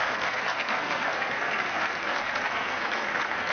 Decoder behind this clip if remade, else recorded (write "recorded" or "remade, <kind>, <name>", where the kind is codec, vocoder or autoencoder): remade, codec, SNAC